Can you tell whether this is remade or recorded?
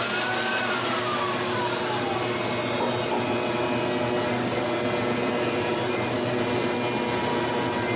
recorded